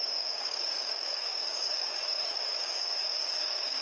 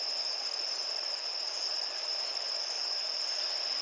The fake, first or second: first